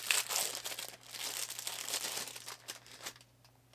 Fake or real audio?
real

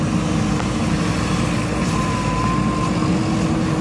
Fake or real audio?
real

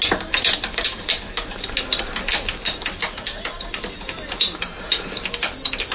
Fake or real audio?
real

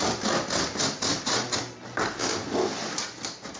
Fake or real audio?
real